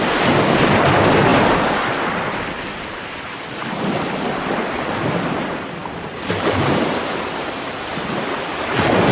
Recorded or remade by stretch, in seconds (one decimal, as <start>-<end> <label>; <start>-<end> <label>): 0.0-9.1 recorded